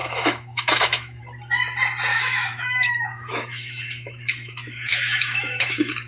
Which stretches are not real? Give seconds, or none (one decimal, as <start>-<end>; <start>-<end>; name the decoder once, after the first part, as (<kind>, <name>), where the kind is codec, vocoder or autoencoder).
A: 0.0-1.2 (autoencoder, DAC-VAE); 2.1-6.1